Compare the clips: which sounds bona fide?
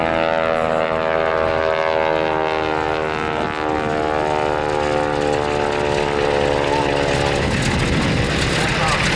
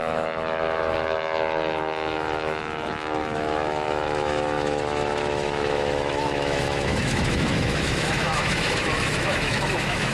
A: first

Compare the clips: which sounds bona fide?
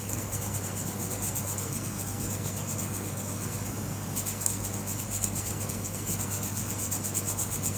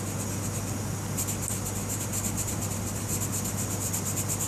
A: second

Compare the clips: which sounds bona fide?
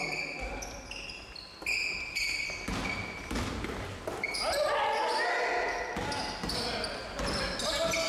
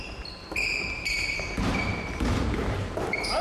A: first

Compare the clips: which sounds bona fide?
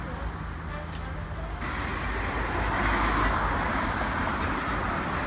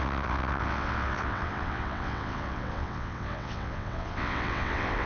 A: first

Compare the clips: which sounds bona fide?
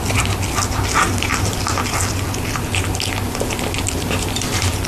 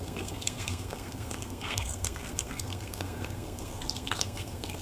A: first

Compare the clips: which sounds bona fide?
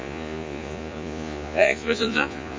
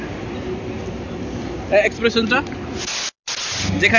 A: second